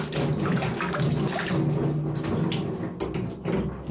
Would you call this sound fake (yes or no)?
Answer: no